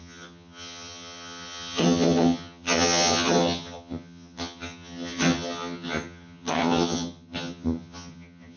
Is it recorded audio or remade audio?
remade